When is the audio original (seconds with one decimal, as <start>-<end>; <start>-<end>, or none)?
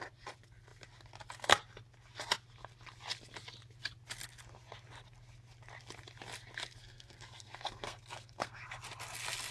0.0-6.8; 8.6-9.5